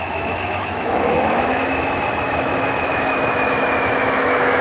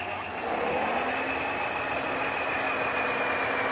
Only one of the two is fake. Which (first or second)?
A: first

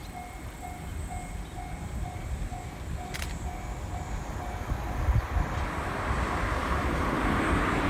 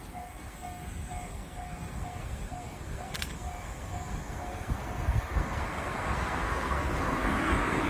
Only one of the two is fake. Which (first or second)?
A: second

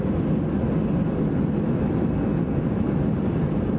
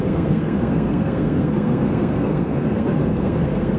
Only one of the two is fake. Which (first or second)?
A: second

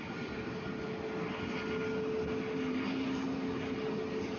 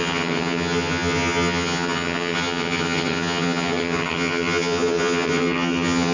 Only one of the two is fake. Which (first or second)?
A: second